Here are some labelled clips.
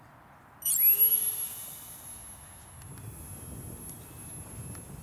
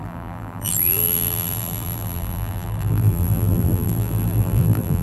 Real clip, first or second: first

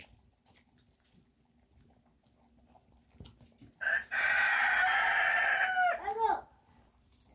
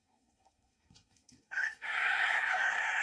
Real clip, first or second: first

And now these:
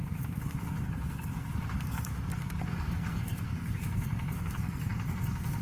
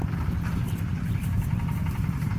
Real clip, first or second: second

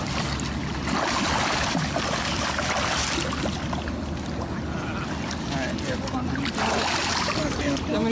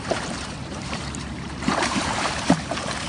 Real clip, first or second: first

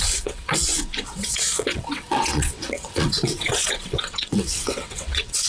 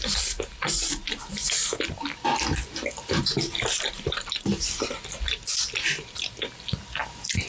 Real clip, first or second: second